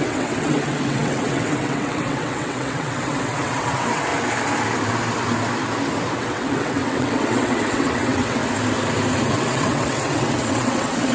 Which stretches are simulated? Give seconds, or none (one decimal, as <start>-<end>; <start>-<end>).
0.0-4.1; 6.2-8.4; 9.3-11.1